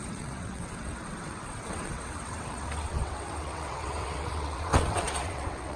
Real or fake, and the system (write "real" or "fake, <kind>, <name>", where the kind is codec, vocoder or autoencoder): fake, vocoder, WaveNeXt